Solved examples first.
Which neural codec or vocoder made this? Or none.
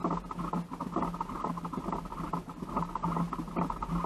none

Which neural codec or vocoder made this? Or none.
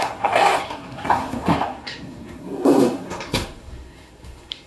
codec, SNAC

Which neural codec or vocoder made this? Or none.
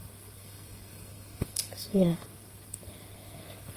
codec, SNAC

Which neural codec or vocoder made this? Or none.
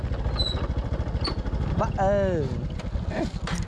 none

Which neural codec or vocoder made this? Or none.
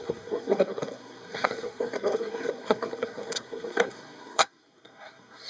codec, SNAC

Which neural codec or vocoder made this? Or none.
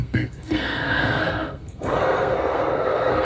codec, SNAC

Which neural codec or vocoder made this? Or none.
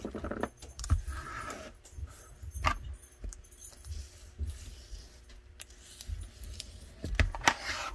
none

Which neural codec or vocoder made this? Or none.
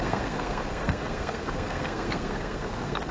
codec, SNAC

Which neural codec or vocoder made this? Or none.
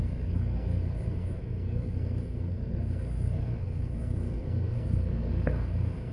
codec, SNAC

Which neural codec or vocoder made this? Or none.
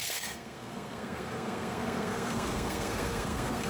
codec, SNAC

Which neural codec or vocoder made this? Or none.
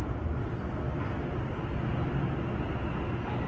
none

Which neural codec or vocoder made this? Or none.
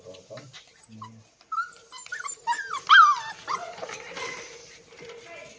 none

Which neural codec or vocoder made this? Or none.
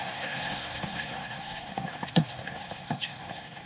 codec, SNAC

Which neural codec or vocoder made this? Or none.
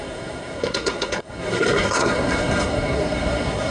codec, SNAC